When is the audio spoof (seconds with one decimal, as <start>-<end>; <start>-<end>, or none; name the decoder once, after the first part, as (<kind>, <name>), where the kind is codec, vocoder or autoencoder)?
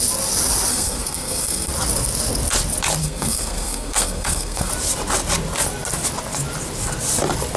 0.7-1.7 (codec, SNAC); 3.0-4.7